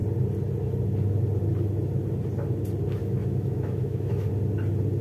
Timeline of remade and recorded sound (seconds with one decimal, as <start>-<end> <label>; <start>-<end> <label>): 0.0-3.0 recorded; 3.0-4.3 remade; 4.3-5.0 recorded